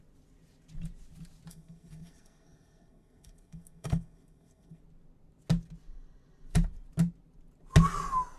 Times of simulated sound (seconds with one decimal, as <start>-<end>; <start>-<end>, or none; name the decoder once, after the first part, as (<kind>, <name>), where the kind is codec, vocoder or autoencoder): 1.5-4.8 (codec, SNAC)